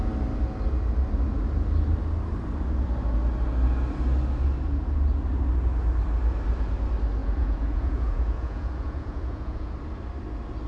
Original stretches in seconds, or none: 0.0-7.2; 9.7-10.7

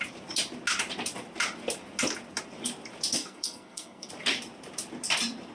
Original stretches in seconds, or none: 0.0-3.2; 4.1-5.5

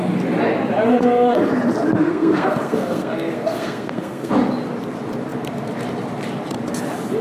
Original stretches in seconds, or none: 0.0-0.9; 1.4-2.0; 4.3-7.2

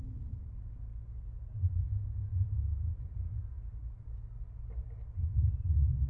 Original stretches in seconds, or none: 0.0-6.1

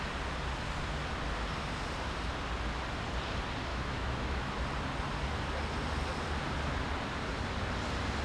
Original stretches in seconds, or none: 0.0-3.7; 4.5-8.2

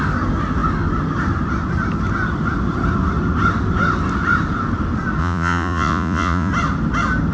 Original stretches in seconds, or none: 0.0-5.2; 6.5-7.3

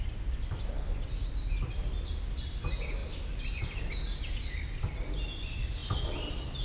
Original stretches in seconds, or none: 0.0-6.6